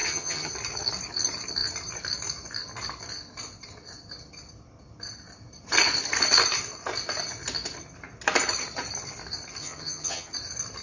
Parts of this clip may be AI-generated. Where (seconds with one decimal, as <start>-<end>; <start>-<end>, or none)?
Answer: 0.0-0.5; 9.6-10.3